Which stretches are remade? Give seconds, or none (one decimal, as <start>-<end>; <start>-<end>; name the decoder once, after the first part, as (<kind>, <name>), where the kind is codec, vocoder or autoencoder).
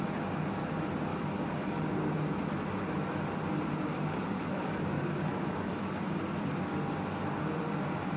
1.1-1.8 (codec, DAC); 3.9-5.7